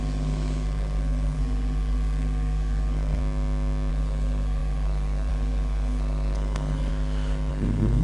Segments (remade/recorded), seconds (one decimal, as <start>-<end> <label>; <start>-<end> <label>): 0.0-3.2 remade; 3.2-3.9 recorded; 3.9-6.9 remade; 6.9-7.5 recorded; 7.5-8.0 remade